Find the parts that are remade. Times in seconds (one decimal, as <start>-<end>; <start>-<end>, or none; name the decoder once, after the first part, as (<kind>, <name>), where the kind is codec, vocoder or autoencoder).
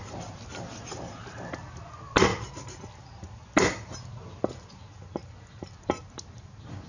none